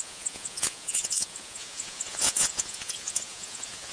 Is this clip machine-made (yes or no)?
yes